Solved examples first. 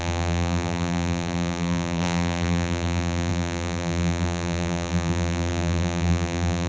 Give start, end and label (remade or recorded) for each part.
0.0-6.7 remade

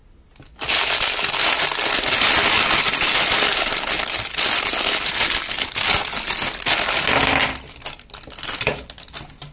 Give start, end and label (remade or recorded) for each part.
0.0-9.5 recorded

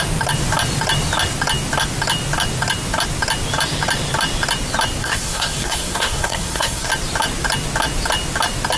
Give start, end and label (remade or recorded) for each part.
0.0-5.0 recorded; 5.0-6.9 remade; 6.9-8.8 recorded